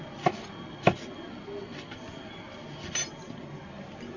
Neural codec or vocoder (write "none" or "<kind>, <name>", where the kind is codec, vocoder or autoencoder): none